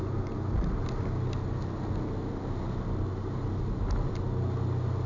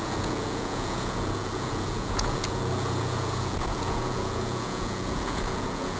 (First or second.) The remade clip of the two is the second